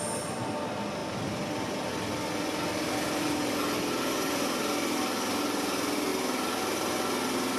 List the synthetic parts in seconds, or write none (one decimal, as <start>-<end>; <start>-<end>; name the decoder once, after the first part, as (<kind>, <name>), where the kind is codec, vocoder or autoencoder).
none